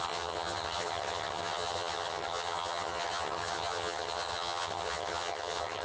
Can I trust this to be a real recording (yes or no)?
no